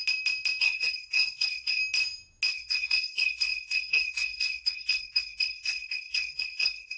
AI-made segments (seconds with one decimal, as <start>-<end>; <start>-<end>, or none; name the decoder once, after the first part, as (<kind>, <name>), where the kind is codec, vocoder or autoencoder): 0.6-1.8 (codec, SNAC); 2.5-7.0